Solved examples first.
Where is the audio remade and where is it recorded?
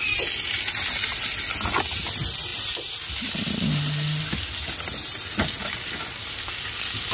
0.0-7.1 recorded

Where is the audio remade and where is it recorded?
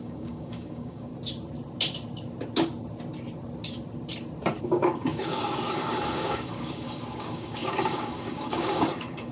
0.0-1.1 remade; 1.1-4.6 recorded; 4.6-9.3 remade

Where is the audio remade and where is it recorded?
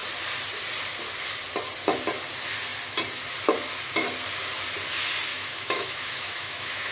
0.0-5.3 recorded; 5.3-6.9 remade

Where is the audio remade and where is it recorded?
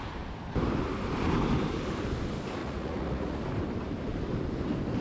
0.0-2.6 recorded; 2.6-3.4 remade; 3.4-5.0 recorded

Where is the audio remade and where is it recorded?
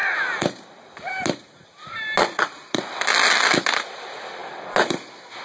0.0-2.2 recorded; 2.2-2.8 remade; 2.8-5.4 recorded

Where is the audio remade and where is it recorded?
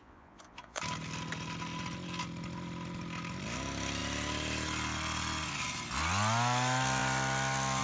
0.0-0.8 remade; 0.8-7.8 recorded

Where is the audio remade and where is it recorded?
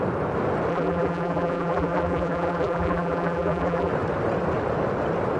0.0-0.7 recorded; 0.7-3.9 remade; 3.9-5.4 recorded